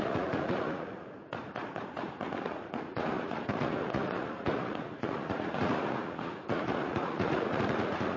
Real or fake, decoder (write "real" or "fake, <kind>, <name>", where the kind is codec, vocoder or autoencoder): fake, vocoder, Vocos